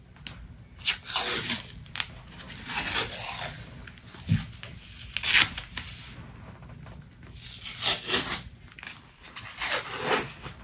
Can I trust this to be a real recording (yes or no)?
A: yes